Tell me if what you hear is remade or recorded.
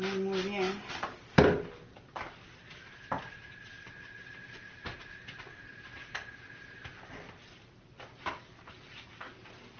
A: recorded